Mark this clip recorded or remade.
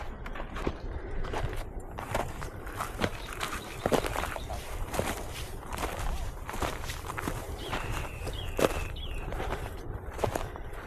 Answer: remade